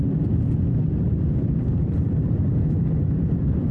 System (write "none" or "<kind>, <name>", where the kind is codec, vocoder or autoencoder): none